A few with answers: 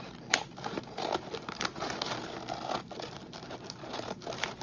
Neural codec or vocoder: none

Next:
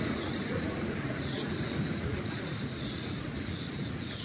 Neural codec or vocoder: vocoder, Vocos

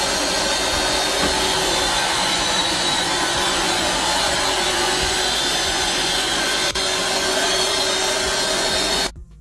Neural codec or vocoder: vocoder, Vocos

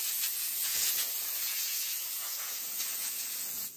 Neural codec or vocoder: vocoder, Vocos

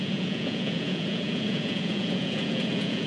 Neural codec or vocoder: vocoder, Vocos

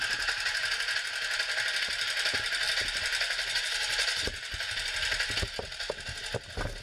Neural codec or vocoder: none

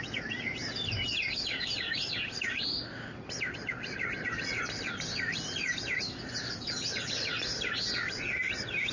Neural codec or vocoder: none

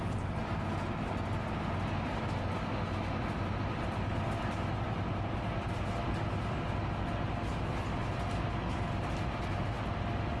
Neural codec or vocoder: none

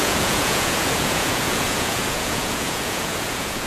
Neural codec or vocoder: vocoder, Vocos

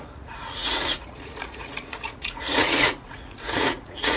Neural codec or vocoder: vocoder, Vocos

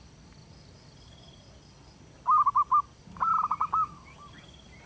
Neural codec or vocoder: none